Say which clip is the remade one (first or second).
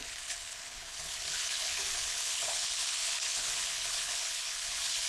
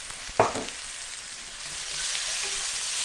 first